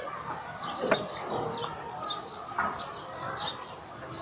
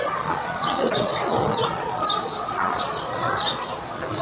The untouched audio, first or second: first